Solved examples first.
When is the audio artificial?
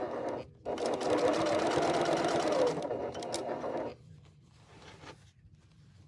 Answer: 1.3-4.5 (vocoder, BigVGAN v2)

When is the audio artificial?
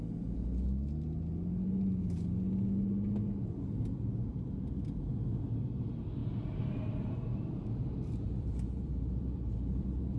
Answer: 6.2-10.2 (vocoder, BigVGAN v2)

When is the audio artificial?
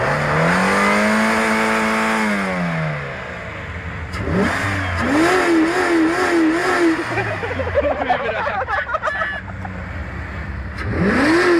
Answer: 6.6-8.5 (vocoder, BigVGAN v2)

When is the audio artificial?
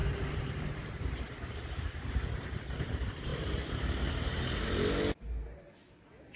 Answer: 0.0-1.0 (vocoder, BigVGAN v2)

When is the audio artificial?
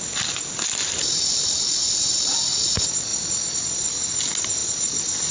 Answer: 1.3-2.6 (vocoder, BigVGAN v2)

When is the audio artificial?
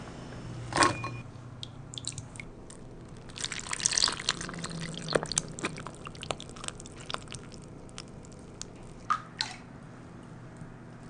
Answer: 1.7-2.6 (vocoder, BigVGAN v2)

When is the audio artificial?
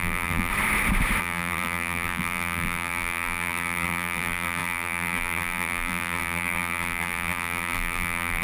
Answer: 0.0-0.5 (vocoder, BigVGAN v2); 1.2-8.4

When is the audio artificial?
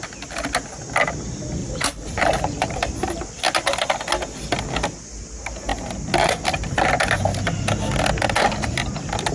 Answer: 1.6-3.2 (vocoder, BigVGAN v2)